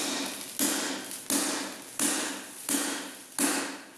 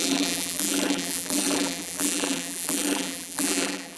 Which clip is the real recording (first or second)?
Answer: first